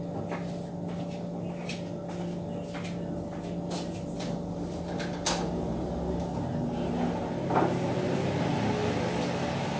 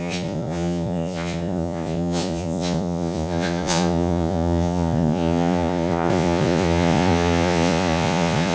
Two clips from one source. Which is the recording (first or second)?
first